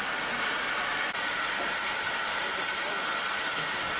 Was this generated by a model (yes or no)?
no